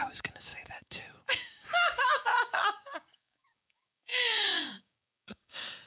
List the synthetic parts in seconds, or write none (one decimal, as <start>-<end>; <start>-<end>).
0.0-5.9